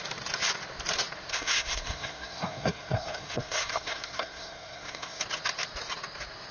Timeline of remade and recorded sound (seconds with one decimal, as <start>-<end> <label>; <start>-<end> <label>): 0.0-1.3 recorded; 1.3-5.2 remade; 5.2-6.5 recorded